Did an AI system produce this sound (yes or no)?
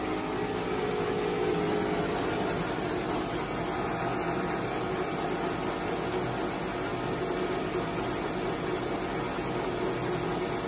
no